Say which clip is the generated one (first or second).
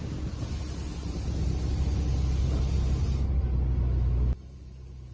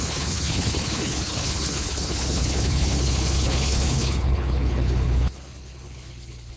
second